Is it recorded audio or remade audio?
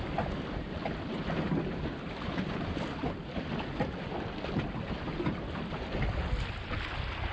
recorded